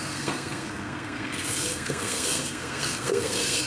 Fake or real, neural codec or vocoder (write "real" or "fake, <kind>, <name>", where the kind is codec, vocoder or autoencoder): fake, codec, SNAC